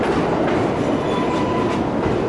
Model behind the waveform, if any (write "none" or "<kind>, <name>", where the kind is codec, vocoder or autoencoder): none